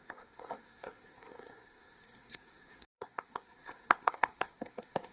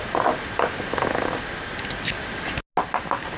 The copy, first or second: first